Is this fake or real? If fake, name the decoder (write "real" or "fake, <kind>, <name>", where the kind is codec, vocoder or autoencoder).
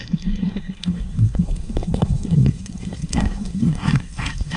fake, codec, SNAC